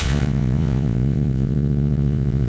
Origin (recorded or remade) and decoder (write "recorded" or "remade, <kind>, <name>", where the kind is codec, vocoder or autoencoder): remade, vocoder, Vocos